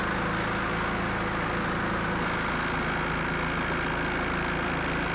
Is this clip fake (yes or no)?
no